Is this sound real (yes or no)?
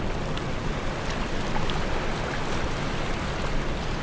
yes